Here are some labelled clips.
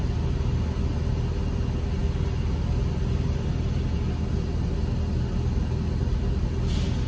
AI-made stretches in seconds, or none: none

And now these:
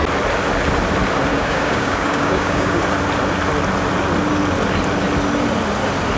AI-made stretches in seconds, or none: 1.3-2.8

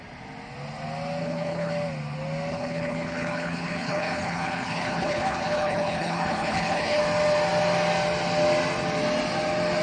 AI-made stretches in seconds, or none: 1.2-1.7; 2.5-7.0

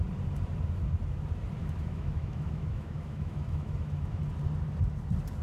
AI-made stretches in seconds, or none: 1.6-4.2

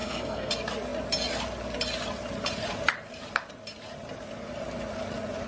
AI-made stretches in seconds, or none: 0.0-0.5

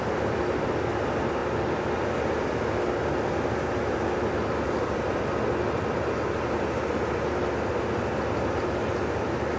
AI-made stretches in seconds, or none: none

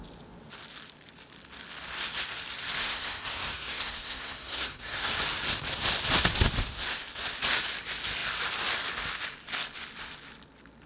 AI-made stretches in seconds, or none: 2.8-5.1

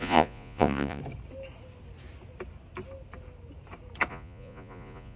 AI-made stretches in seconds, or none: 0.0-1.0; 4.1-5.2